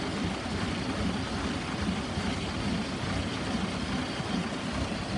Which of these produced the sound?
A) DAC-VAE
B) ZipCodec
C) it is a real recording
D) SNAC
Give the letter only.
C